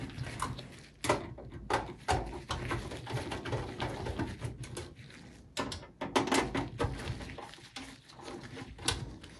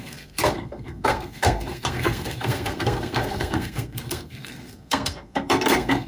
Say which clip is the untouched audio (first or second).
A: first